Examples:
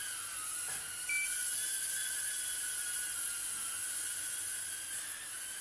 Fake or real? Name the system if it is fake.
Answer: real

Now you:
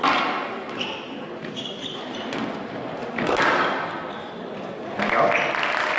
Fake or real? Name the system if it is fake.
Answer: real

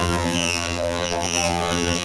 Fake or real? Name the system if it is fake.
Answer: fake, vocoder, BigVGAN v2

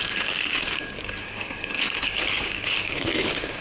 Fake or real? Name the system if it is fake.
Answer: fake, codec, DAC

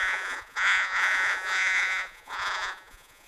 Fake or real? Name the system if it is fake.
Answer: fake, vocoder, Vocos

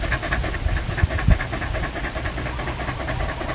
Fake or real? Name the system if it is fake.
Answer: real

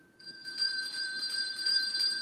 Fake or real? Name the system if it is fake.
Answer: fake, vocoder, BigVGAN v2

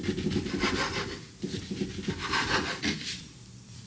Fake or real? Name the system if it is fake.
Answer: real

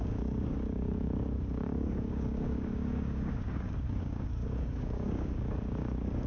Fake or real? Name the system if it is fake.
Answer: fake, codec, DAC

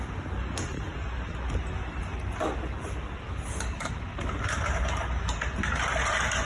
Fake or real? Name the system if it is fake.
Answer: real